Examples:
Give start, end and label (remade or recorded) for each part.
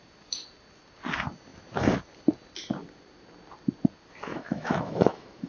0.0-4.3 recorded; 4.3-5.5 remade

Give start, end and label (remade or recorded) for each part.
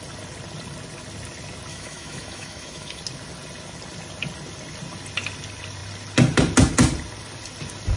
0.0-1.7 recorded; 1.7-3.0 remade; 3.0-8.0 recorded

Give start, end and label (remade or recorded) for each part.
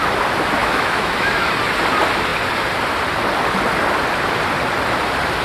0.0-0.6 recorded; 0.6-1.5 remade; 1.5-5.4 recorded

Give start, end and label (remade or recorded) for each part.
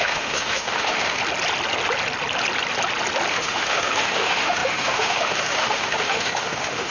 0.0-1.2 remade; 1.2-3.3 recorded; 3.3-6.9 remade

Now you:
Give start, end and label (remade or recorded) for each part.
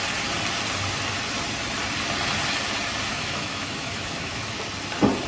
0.0-3.1 recorded; 3.1-4.6 remade; 4.6-5.3 recorded